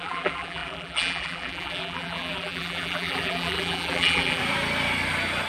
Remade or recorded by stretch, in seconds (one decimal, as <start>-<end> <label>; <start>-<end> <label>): 0.0-4.4 remade; 4.4-5.5 recorded